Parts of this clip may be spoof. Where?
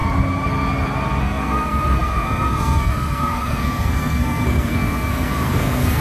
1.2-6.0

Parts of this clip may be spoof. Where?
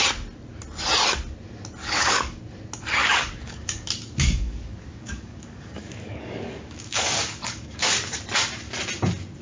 1.8-2.4; 3.0-8.2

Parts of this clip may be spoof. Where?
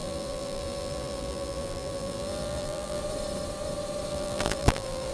0.0-3.0; 4.1-5.1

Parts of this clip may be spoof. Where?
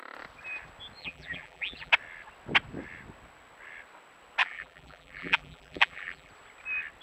1.0-1.9; 4.4-6.3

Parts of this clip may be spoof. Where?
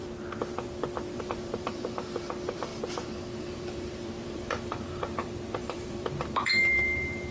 1.2-2.7; 3.4-7.3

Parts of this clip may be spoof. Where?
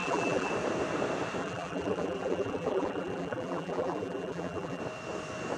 0.0-0.5; 1.4-4.8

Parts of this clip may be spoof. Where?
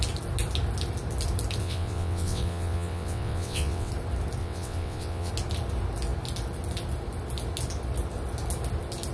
1.6-3.9; 4.4-5.3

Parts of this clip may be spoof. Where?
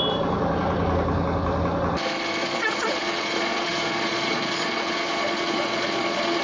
2.4-6.4